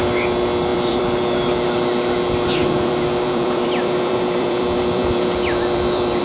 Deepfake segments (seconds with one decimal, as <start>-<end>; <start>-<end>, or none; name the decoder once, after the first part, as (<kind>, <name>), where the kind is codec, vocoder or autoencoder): 0.7-1.2 (vocoder, BigVGAN v2); 2.6-6.2